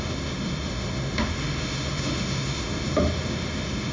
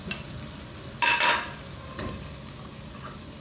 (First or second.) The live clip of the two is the second